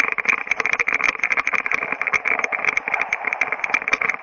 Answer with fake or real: real